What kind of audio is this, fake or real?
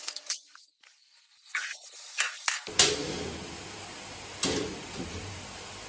real